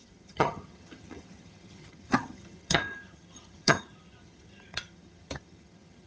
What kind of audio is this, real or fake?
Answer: fake